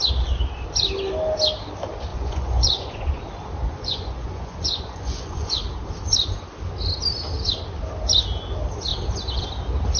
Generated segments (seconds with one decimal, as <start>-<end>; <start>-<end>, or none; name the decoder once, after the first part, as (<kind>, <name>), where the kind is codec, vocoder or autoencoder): 2.1-3.2 (vocoder, Vocos); 3.6-5.6